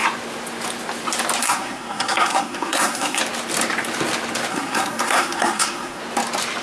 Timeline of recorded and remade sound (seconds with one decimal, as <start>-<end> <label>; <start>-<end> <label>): 0.0-1.4 recorded; 1.4-3.2 remade; 3.2-4.5 recorded; 4.5-6.0 remade; 6.0-6.6 recorded

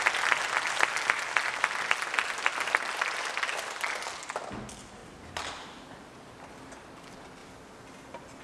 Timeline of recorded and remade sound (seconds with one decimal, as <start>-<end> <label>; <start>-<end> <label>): 0.0-5.0 recorded; 5.0-6.1 remade; 6.1-8.4 recorded

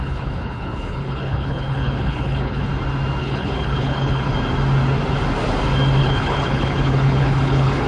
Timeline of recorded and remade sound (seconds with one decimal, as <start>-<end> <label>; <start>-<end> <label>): 0.0-2.7 remade; 2.7-3.2 recorded; 3.2-4.3 remade; 4.3-6.0 recorded; 6.0-7.9 remade

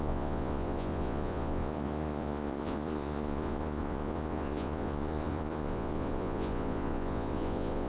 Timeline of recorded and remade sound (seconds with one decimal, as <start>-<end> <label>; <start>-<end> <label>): 0.0-7.9 remade

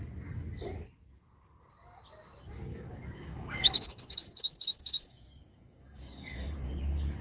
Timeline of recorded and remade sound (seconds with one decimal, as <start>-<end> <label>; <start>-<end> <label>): 0.0-2.7 recorded; 2.7-7.2 remade